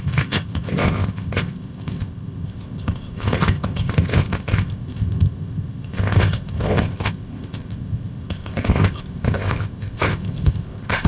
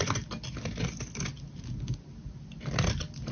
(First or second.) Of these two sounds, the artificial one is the first